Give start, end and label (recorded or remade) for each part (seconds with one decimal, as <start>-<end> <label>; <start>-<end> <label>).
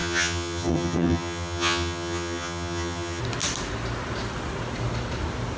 0.0-3.2 remade; 3.2-5.6 recorded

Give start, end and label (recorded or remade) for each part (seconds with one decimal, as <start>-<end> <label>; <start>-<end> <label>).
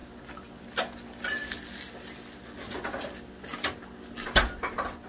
0.0-5.1 recorded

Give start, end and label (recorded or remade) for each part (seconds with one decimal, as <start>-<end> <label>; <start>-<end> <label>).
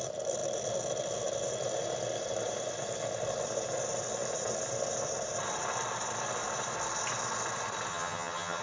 0.0-7.9 recorded; 7.9-8.6 remade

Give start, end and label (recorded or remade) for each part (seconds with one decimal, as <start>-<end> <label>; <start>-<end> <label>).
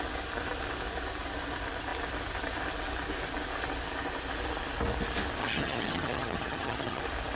0.0-5.4 recorded; 5.4-7.0 remade; 7.0-7.4 recorded